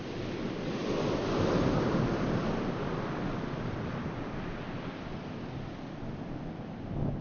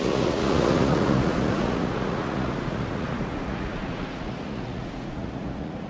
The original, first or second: first